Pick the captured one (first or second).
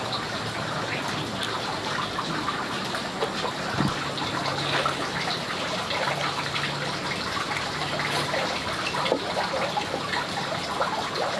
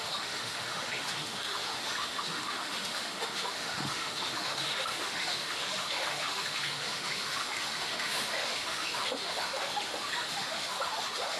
first